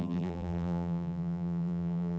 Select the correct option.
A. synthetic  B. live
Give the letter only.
A